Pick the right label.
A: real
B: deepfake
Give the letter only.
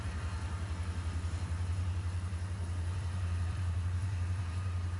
B